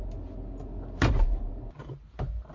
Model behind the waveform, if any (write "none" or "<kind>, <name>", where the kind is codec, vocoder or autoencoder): none